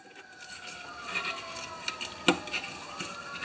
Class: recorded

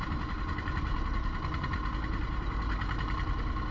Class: recorded